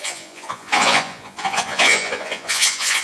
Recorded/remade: remade